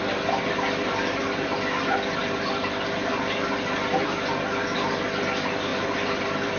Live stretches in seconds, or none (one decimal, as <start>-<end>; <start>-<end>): 0.0-6.6